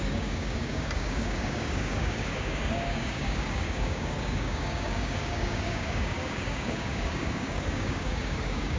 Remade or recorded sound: remade